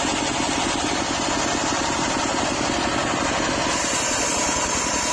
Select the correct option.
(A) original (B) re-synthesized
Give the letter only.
A